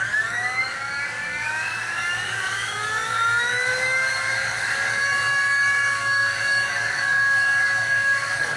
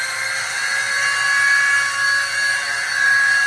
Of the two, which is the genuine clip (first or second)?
second